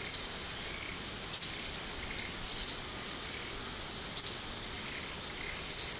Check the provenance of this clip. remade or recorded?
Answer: recorded